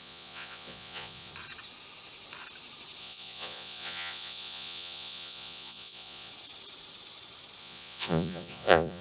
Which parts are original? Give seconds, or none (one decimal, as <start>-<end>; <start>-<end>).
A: 1.3-3.0; 6.3-7.6

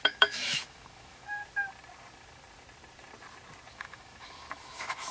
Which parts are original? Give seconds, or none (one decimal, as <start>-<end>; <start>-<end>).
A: 1.4-3.7

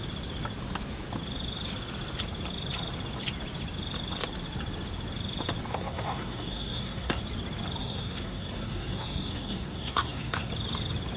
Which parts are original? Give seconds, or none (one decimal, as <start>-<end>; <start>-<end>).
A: 0.0-5.7; 7.2-7.8; 10.5-11.2

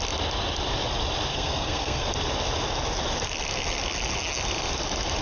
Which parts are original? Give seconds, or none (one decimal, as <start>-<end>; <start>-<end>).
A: 0.0-1.3; 2.1-5.2